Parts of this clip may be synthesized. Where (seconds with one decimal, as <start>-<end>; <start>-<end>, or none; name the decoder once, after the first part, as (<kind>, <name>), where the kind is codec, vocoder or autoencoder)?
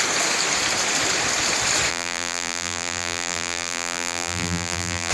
1.9-5.1 (vocoder, BigVGAN v2)